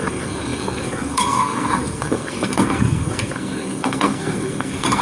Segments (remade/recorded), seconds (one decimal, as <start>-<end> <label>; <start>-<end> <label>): 0.0-5.0 remade